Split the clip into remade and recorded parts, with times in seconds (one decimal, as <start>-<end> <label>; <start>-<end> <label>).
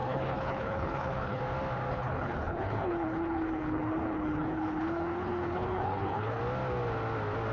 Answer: 0.0-1.4 remade; 1.4-1.9 recorded; 1.9-6.4 remade; 6.4-7.5 recorded